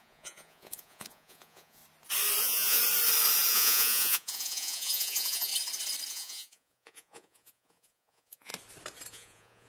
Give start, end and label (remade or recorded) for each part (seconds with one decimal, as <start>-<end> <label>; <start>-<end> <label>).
0.0-1.8 remade; 1.8-2.4 recorded; 2.4-2.8 remade; 2.8-3.5 recorded; 3.5-5.5 remade; 5.5-6.1 recorded; 6.1-8.5 remade; 8.5-9.1 recorded; 9.1-9.7 remade